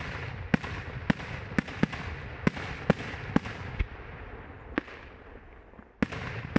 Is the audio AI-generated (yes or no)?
no